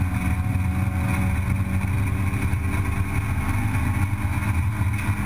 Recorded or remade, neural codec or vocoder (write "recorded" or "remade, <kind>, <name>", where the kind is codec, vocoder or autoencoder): recorded